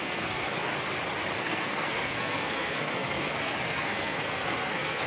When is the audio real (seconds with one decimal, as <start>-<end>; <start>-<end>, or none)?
0.7-1.4

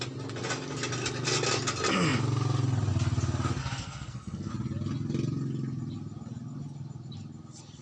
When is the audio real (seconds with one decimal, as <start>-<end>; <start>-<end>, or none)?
0.0-3.6; 4.5-7.8

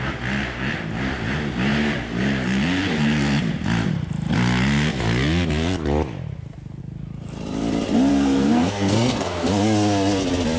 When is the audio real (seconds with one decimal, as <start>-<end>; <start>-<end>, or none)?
0.0-8.1; 9.5-10.6

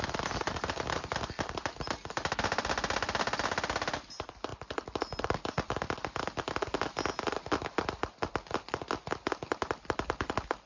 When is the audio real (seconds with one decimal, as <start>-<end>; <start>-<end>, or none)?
0.0-10.7

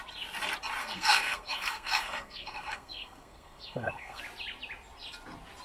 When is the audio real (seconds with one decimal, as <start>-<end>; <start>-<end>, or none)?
0.0-0.8; 4.2-5.6

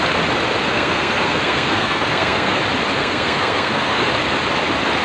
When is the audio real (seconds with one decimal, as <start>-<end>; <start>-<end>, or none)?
0.0-0.7; 2.6-3.0; 4.1-5.0

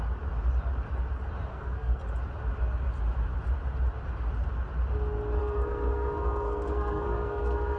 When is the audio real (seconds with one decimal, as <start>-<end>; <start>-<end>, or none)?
0.0-1.5; 2.0-5.4